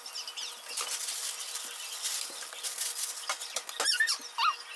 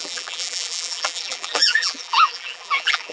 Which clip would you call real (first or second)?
first